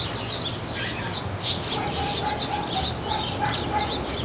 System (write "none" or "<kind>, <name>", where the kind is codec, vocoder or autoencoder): none